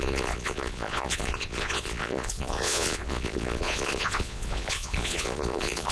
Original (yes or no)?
no